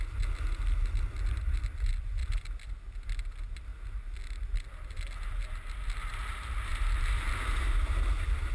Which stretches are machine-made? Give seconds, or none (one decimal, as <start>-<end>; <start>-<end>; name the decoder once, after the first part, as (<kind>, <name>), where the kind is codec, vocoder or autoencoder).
none